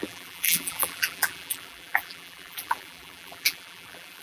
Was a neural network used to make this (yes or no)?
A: yes